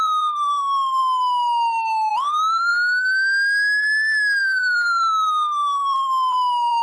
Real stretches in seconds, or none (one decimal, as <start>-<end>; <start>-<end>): 1.0-2.1; 2.7-4.4